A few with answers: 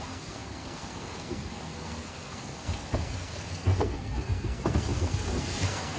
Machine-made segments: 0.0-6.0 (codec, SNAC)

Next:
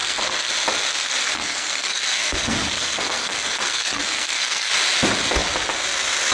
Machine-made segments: 0.0-0.5 (codec, SNAC); 0.9-4.7

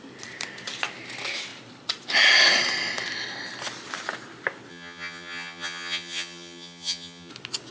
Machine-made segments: 4.7-7.3 (vocoder, HiFi-GAN)

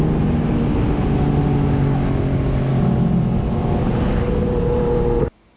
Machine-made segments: none

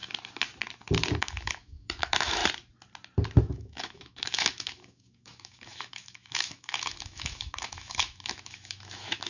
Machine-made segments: 1.2-2.4 (autoencoder, DAC-VAE); 3.4-9.3

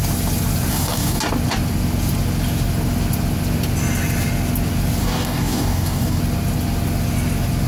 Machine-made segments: 0.7-1.2 (codec, DAC); 5.0-6.2